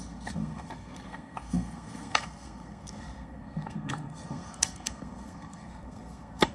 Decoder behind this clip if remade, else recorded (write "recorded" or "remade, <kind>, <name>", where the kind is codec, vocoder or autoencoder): remade, codec, SNAC